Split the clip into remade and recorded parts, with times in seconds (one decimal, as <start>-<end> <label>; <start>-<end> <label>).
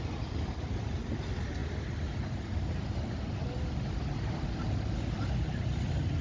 0.0-6.2 recorded